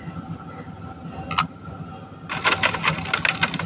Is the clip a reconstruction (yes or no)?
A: no